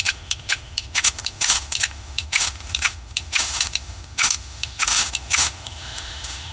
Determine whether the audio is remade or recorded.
remade